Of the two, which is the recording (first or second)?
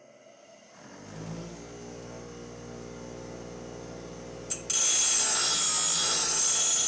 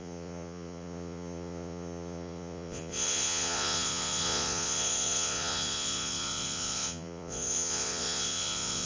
first